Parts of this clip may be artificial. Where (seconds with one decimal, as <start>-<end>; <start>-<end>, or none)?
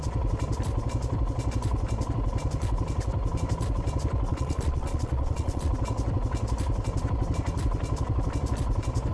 4.3-5.7